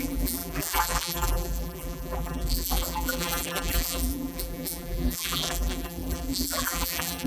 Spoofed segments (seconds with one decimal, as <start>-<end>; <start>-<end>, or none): 0.0-7.3